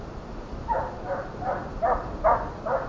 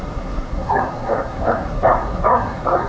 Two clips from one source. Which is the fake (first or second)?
second